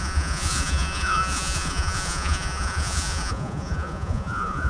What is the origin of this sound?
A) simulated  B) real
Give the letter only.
A